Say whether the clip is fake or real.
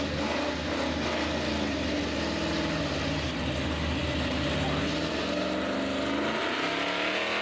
real